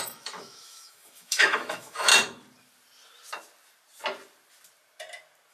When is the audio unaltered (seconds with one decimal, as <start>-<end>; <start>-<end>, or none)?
2.1-5.5